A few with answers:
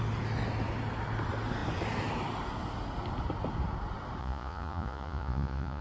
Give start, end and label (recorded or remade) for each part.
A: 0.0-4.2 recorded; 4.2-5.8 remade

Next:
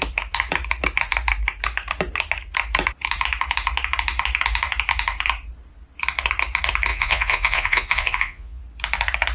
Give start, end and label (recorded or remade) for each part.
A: 0.0-6.9 recorded; 6.9-8.6 remade; 8.6-9.3 recorded

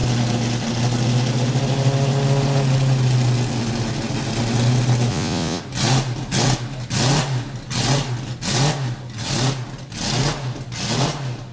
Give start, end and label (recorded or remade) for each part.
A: 0.0-5.1 recorded; 5.1-5.6 remade; 5.6-11.5 recorded